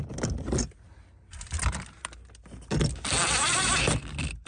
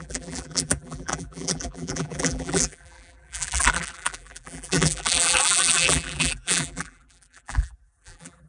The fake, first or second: second